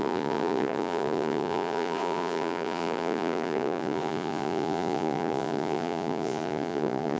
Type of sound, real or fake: fake